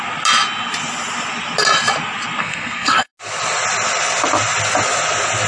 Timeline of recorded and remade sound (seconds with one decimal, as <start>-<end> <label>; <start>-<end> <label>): 0.0-2.4 recorded; 2.4-3.1 remade; 3.1-5.5 recorded